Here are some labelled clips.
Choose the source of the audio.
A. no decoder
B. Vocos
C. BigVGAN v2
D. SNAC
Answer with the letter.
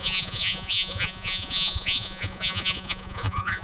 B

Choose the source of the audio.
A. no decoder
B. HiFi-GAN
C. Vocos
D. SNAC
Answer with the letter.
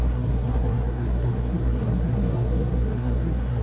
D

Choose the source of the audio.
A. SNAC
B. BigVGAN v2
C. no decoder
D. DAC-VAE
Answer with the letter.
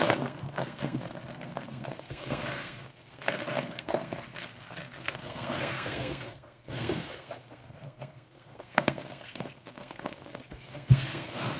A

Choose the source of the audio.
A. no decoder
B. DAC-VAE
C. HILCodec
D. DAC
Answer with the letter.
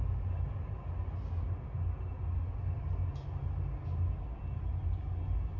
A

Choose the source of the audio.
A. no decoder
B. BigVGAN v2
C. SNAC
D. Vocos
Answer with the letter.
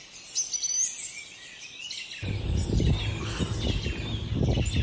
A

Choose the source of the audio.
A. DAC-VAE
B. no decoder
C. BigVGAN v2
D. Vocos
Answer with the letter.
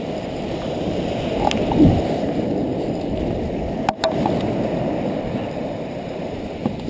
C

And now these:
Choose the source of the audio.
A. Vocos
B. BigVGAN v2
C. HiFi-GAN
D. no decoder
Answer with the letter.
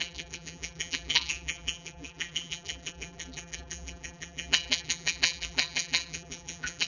B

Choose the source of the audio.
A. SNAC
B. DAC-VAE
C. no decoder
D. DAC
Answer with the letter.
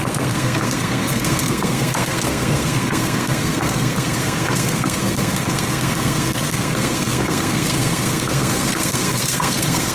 A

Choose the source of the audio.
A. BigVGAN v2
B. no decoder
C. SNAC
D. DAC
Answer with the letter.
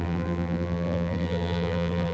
A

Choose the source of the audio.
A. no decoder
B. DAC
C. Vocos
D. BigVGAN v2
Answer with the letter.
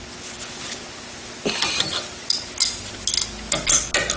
A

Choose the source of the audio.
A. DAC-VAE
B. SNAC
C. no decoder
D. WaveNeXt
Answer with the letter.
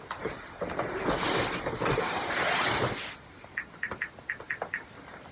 C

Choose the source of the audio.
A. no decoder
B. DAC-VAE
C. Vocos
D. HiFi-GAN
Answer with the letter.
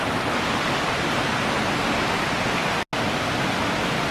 A